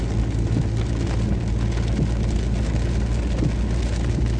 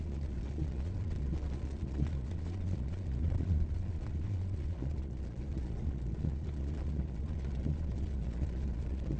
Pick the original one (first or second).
first